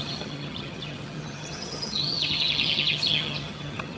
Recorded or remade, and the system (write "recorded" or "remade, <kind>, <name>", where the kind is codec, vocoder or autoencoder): remade, vocoder, HiFi-GAN